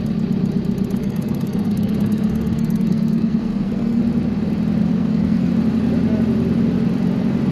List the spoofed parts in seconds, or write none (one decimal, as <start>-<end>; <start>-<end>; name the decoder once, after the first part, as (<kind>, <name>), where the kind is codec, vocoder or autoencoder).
1.0-4.0 (codec, SNAC); 4.8-5.5